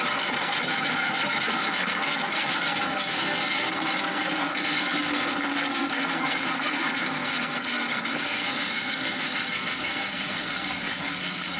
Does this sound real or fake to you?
fake